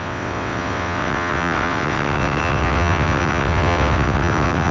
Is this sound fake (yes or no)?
yes